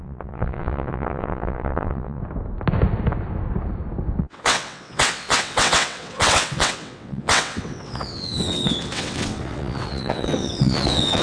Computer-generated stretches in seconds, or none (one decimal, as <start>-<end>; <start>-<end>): 0.0-2.2; 4.2-11.2